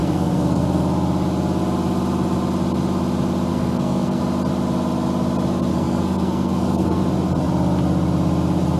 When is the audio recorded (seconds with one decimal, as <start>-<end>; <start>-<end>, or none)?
0.8-3.5; 4.2-5.7; 7.0-8.8